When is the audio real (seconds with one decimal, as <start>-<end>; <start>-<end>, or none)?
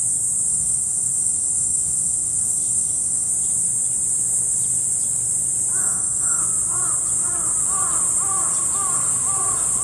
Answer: 0.0-0.5; 3.3-5.8; 6.4-9.8